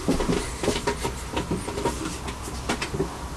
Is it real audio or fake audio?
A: real